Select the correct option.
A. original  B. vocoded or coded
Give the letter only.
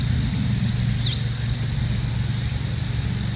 A